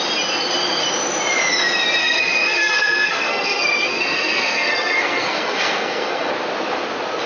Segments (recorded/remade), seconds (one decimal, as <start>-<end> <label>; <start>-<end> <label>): 0.0-2.0 recorded; 2.0-6.3 remade; 6.3-7.3 recorded